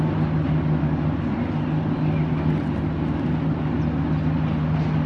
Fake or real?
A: real